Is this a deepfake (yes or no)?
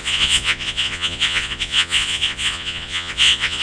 yes